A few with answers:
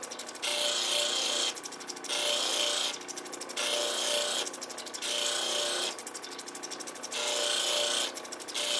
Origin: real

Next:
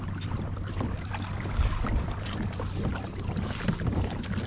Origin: fake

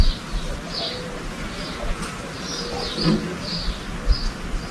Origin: real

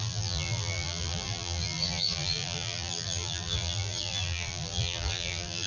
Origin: fake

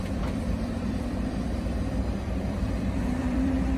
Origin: fake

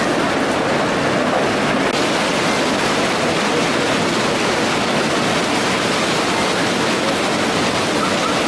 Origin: real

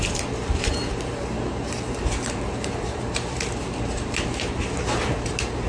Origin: fake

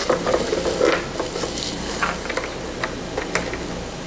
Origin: real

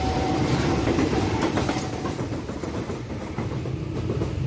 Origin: fake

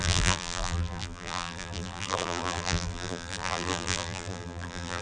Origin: fake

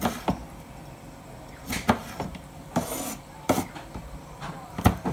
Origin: fake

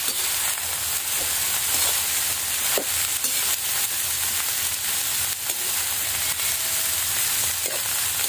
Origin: real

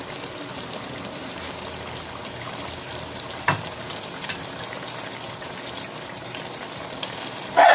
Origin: real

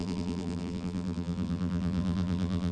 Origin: fake